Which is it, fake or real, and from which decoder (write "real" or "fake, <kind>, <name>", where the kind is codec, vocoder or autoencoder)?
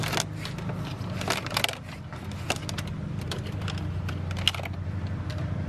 real